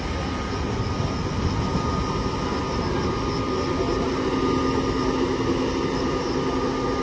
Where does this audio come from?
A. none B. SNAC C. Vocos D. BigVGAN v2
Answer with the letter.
A